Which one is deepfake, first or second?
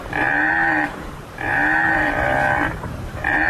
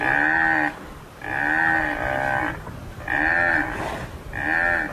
first